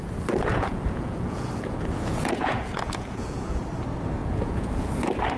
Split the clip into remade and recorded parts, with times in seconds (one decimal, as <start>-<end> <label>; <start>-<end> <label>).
0.0-0.5 recorded; 0.5-3.6 remade; 3.6-4.2 recorded; 4.2-4.9 remade; 4.9-5.4 recorded